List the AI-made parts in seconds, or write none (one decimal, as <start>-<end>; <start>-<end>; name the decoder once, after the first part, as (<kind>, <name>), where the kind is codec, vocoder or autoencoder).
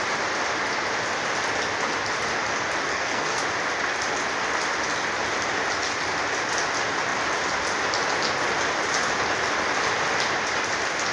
2.9-3.4 (codec, SNAC)